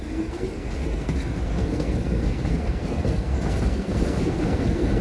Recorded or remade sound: remade